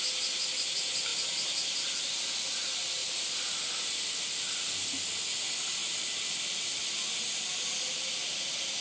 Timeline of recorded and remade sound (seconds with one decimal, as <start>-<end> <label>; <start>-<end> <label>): 0.0-3.0 recorded; 3.0-4.0 remade; 4.0-5.8 recorded; 5.8-6.9 remade; 6.9-8.8 recorded